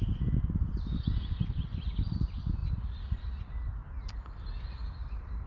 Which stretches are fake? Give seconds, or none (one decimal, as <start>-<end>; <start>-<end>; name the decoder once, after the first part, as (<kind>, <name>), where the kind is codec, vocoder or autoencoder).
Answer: none